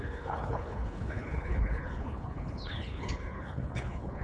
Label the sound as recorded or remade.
remade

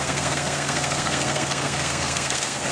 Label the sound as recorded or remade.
remade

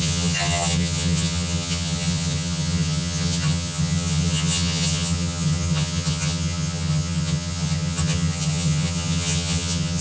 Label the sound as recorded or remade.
remade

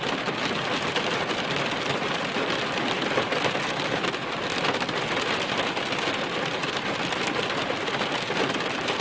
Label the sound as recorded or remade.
recorded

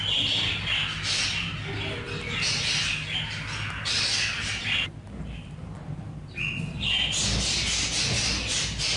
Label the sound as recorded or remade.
recorded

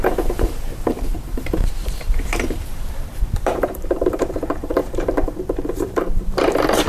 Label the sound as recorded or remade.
remade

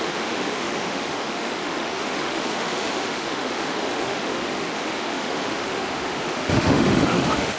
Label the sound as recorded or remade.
remade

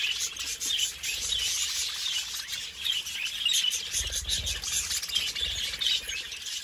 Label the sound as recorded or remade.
recorded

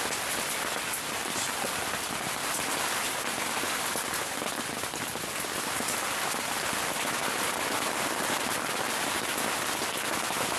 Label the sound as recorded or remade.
recorded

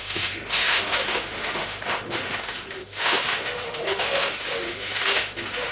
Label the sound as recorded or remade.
remade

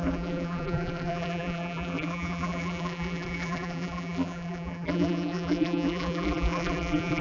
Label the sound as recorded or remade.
remade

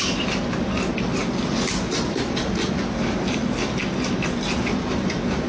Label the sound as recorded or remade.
recorded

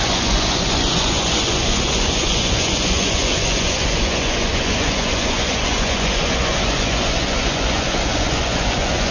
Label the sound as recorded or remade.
remade